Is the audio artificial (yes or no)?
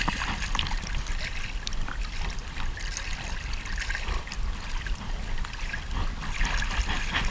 no